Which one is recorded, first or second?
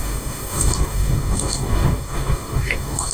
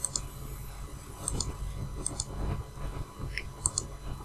second